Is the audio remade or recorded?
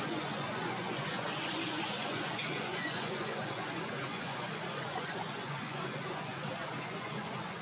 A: remade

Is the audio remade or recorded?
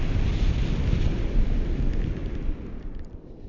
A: recorded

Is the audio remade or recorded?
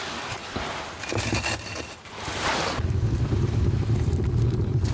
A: recorded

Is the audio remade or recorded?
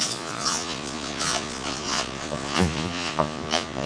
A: remade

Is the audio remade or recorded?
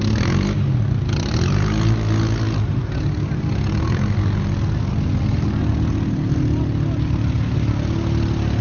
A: recorded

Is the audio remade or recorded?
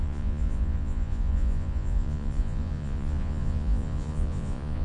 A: remade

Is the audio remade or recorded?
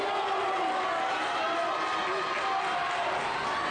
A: recorded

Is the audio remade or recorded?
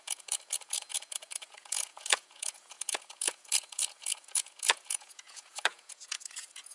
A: remade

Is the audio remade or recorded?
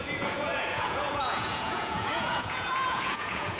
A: remade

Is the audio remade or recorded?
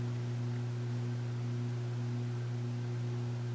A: recorded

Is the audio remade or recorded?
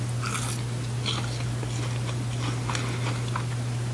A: recorded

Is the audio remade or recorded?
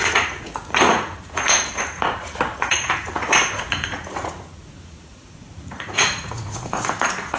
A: remade